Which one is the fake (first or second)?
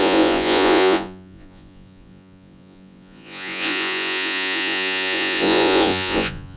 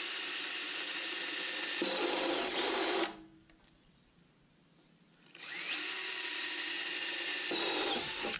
first